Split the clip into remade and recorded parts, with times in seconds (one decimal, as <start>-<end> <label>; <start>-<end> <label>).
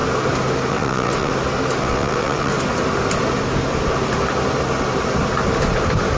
0.0-0.7 recorded; 0.7-1.3 remade; 1.3-1.8 recorded; 1.8-2.5 remade; 2.5-6.2 recorded